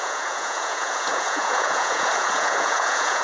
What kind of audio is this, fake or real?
fake